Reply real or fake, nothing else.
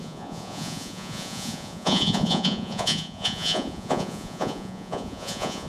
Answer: fake